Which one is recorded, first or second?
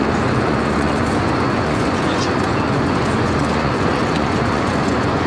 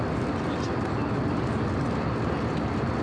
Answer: second